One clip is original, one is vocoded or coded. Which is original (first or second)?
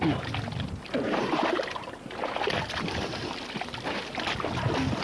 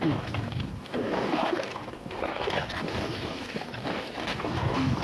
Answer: first